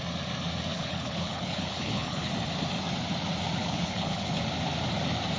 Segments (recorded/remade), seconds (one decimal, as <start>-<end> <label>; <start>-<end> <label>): 0.0-0.7 recorded; 0.7-2.3 remade; 2.3-3.6 recorded; 3.6-4.4 remade; 4.4-5.4 recorded